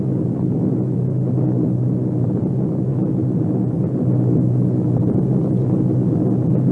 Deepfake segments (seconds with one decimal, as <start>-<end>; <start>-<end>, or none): none